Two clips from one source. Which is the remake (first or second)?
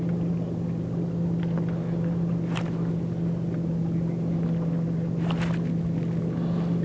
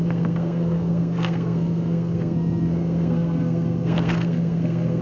second